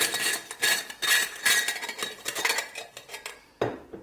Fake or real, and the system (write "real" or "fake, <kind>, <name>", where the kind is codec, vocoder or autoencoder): real